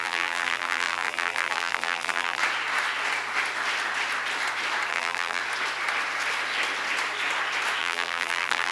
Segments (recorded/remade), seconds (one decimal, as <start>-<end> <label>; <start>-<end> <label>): 0.0-2.4 remade; 2.4-4.9 recorded; 4.9-5.4 remade; 5.4-7.8 recorded; 7.8-8.7 remade